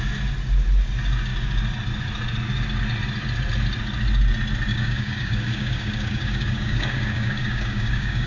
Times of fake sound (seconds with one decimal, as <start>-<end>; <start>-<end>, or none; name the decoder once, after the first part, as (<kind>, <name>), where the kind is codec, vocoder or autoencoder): 4.7-8.3 (codec, DAC)